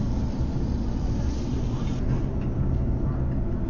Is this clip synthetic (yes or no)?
no